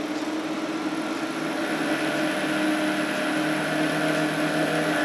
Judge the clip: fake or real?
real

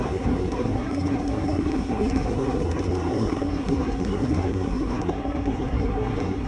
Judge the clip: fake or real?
fake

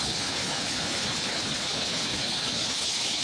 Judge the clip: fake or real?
fake